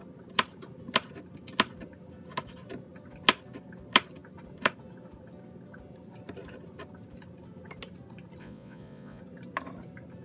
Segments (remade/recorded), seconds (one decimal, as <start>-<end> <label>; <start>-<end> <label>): 0.0-8.4 recorded; 8.4-9.2 remade; 9.2-10.2 recorded